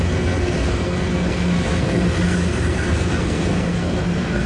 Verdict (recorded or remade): remade